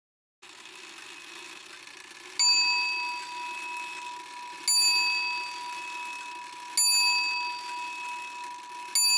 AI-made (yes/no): no